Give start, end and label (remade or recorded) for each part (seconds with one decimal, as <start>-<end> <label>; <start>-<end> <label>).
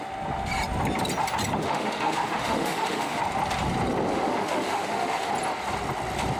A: 0.0-1.6 recorded; 1.6-3.2 remade; 3.2-4.1 recorded; 4.1-5.3 remade; 5.3-6.4 recorded